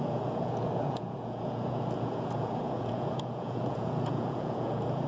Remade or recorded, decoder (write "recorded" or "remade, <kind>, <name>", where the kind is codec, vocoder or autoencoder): remade, vocoder, Vocos